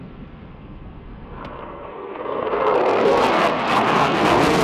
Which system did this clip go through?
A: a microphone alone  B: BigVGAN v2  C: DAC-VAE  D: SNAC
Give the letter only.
D